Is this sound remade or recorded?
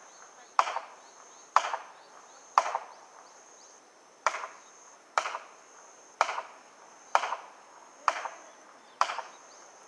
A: remade